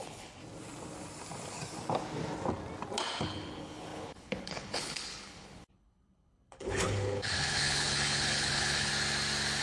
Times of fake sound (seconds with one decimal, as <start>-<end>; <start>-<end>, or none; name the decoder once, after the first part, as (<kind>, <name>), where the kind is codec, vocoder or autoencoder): 0.0-0.4 (codec, HILCodec); 3.2-8.9